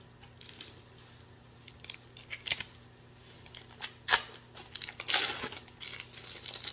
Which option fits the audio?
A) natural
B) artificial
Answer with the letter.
A